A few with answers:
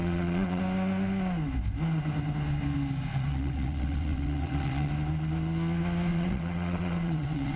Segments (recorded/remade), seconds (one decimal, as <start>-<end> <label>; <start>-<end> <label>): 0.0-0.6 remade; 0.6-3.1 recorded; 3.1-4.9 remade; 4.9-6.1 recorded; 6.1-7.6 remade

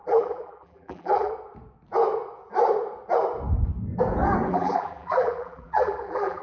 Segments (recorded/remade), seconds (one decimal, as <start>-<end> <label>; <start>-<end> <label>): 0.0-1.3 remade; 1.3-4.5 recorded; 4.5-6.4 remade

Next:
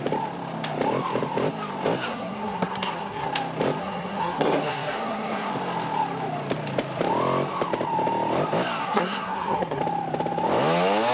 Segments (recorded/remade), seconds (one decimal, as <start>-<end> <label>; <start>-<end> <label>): 0.0-2.1 recorded; 2.1-3.3 remade; 3.3-3.8 recorded; 3.8-5.5 remade; 5.5-8.8 recorded; 8.8-9.8 remade; 9.8-11.1 recorded